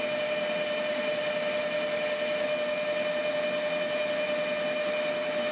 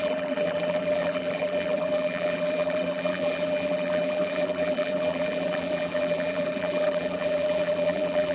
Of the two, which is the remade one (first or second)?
second